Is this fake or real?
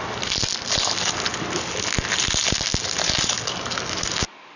real